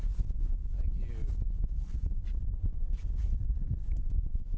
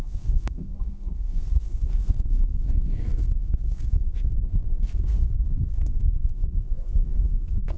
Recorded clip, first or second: first